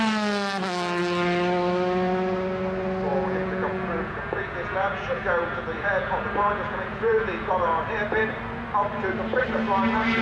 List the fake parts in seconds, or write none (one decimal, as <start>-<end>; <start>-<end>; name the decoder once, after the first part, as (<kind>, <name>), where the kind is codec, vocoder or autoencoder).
3.1-7.8 (vocoder, Vocos)